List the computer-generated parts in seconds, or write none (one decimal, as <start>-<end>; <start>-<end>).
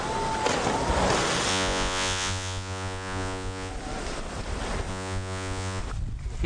1.5-3.7; 4.9-5.8